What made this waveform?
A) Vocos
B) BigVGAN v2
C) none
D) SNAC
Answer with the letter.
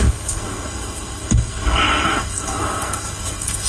D